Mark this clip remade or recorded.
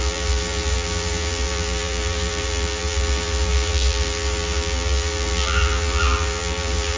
remade